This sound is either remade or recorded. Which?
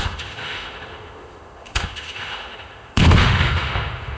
remade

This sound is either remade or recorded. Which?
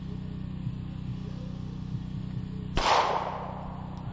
recorded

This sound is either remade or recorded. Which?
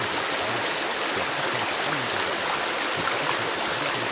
recorded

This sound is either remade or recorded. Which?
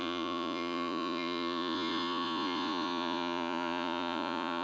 remade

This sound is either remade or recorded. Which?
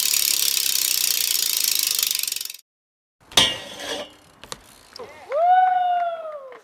recorded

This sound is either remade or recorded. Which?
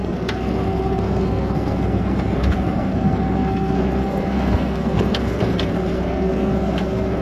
remade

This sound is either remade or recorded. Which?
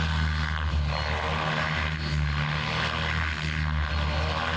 recorded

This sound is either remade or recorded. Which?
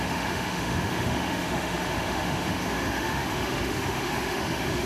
remade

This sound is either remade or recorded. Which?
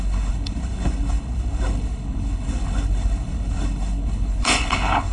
remade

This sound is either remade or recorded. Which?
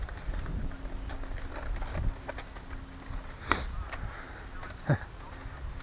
recorded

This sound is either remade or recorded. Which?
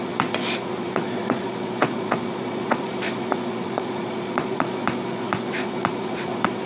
remade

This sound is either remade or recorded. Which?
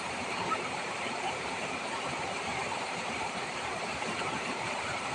remade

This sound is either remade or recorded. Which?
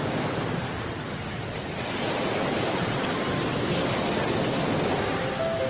remade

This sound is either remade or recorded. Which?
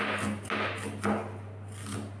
recorded